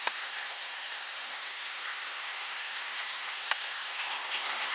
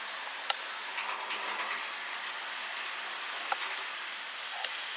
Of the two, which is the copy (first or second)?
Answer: first